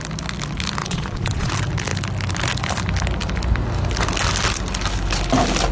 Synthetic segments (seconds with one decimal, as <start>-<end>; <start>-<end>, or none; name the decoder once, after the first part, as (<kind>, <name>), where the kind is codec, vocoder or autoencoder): 0.8-1.5 (vocoder, Vocos)

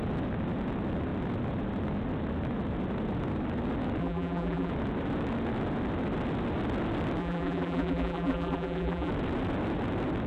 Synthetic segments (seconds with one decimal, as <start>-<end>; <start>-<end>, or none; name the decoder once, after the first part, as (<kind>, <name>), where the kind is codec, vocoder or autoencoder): 4.0-4.7 (vocoder, BigVGAN v2); 7.2-9.1

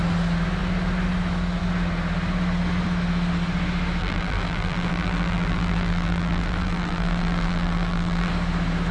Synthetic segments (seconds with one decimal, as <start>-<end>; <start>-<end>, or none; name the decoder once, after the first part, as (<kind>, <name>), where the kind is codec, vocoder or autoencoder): 4.0-8.3 (vocoder, BigVGAN v2)

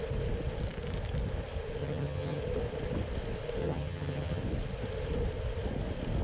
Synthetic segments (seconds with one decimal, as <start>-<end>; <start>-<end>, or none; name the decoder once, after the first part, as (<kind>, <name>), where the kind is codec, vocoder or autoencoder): 1.8-2.4 (vocoder, HiFi-GAN); 3.6-4.4